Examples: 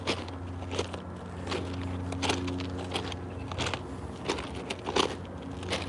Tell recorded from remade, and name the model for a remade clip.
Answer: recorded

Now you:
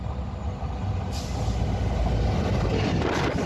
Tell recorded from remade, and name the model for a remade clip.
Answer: recorded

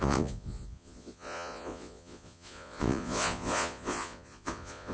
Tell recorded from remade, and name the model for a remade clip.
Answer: remade, vocoder, Vocos